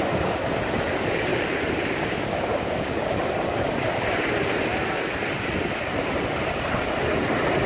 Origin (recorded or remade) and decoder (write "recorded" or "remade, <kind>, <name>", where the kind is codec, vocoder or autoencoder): recorded